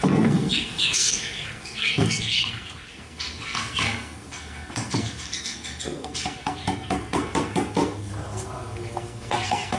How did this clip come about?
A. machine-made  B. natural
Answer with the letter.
A